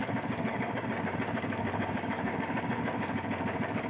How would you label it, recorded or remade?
remade